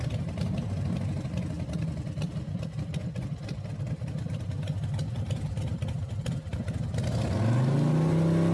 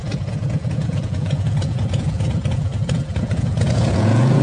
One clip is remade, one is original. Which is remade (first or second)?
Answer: second